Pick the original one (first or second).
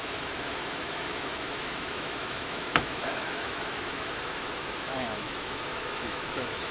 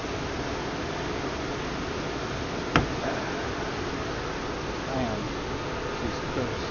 second